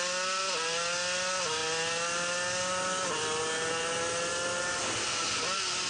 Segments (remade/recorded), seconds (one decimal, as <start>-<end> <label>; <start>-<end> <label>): 0.0-5.9 recorded